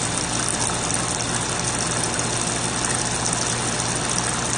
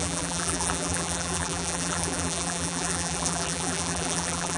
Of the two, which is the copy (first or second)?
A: second